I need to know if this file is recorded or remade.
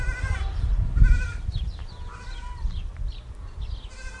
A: recorded